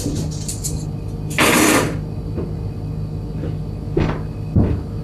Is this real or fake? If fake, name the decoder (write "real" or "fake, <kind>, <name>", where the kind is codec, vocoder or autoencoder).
real